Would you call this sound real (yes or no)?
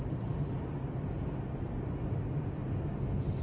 yes